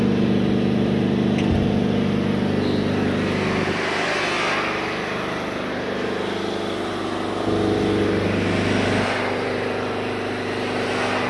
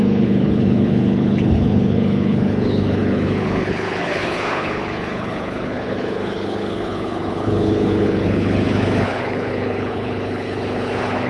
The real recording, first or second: first